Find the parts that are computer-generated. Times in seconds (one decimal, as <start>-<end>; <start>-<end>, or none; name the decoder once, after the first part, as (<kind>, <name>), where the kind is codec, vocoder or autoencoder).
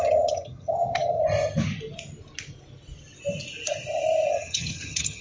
0.0-1.2 (vocoder, HiFi-GAN); 4.3-5.2